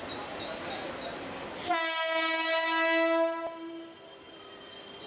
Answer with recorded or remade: recorded